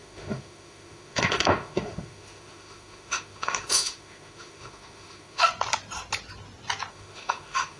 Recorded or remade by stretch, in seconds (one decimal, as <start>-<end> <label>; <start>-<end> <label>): 0.0-5.4 remade; 5.4-6.9 recorded; 6.9-7.8 remade